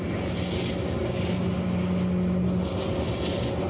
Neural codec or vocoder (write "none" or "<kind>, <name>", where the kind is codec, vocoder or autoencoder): none